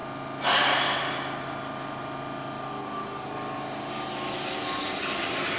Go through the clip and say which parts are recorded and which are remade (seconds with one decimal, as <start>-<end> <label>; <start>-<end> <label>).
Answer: 0.0-5.6 recorded